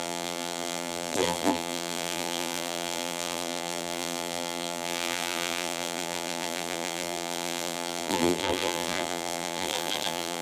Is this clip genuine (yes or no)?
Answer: no